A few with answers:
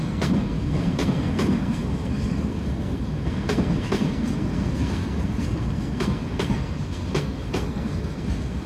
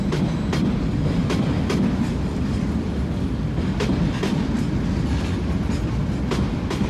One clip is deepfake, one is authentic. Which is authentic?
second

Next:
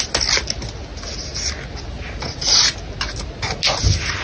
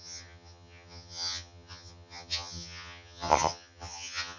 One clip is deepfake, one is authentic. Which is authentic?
first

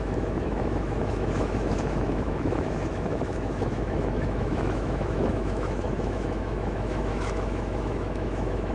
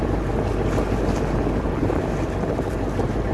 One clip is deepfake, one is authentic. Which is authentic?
second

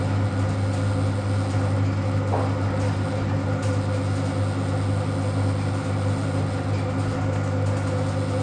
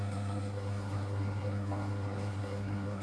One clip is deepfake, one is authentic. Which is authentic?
first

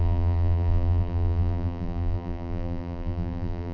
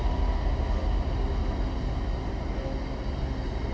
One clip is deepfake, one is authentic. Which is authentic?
second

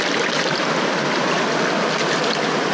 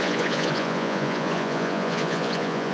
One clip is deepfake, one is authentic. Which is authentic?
first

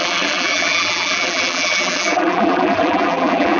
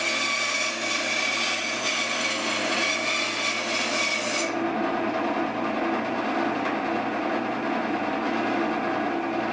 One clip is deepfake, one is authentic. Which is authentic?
second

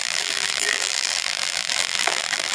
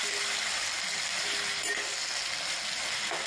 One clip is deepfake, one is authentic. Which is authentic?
second